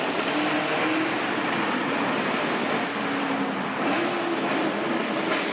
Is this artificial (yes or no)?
no